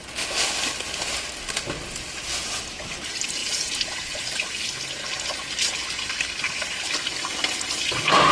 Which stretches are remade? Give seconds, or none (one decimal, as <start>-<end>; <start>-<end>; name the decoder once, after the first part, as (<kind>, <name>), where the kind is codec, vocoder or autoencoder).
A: 3.4-4.2 (vocoder, Vocos)